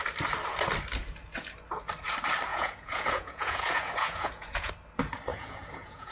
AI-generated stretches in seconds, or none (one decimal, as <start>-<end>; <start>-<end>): 2.5-4.7; 5.3-6.1